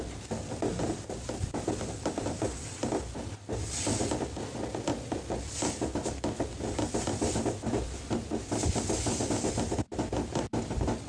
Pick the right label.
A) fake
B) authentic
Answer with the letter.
B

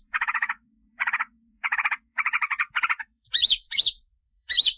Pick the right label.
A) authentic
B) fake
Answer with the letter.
B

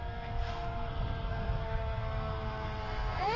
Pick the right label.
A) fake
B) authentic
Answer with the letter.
A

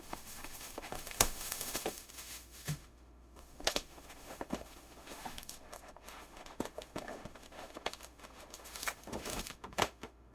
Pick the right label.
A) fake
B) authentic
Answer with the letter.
A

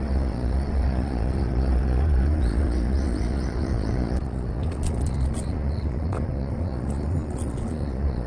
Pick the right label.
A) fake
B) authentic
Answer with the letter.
A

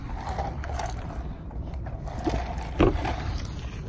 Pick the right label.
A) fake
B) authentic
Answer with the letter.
B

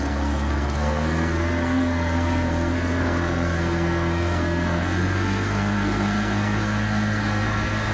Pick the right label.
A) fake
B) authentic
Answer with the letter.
A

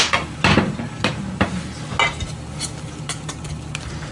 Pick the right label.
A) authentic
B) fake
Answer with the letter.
A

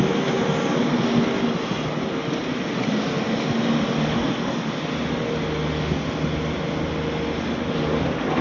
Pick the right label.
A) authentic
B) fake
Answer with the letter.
A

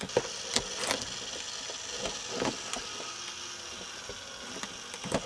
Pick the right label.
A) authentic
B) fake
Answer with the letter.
A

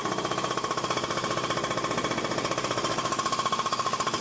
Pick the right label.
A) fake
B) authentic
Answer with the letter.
B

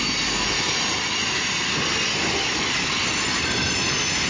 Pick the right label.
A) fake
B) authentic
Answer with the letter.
B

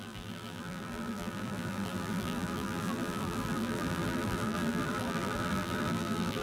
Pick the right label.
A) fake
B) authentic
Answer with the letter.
A